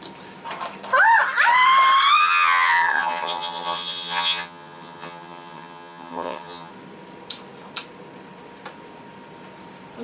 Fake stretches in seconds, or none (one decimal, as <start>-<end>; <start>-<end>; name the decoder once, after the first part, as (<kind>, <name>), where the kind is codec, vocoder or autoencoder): 2.2-6.7 (vocoder, HiFi-GAN)